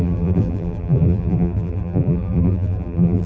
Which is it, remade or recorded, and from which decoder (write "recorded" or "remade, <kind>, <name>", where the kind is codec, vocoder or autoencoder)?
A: remade, vocoder, BigVGAN v2